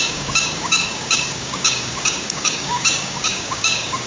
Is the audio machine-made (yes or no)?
yes